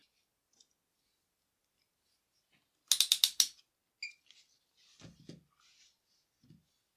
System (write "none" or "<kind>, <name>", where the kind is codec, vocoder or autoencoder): none